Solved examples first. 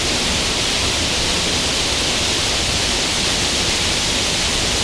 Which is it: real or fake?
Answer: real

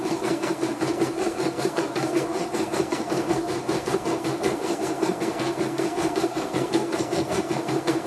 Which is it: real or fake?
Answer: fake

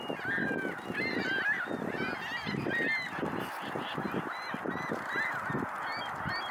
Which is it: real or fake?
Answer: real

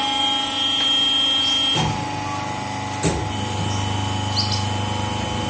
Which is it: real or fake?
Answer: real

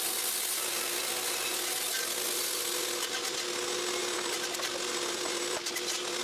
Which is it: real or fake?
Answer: real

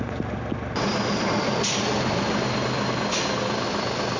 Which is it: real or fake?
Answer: real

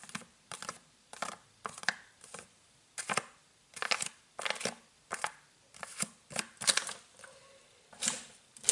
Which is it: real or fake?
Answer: real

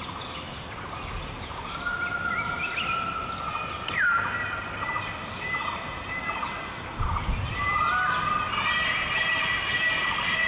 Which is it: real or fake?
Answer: real